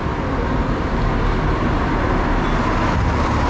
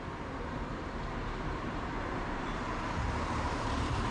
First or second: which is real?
first